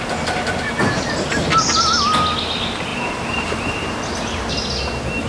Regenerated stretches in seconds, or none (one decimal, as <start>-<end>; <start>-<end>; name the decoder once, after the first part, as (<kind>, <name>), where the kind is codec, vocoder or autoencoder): 2.9-4.4 (vocoder, BigVGAN v2)